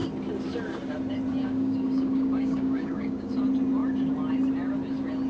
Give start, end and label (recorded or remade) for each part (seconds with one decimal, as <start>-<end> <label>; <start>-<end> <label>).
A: 0.0-1.4 recorded; 1.4-3.3 remade; 3.3-5.3 recorded